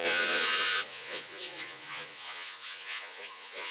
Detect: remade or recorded remade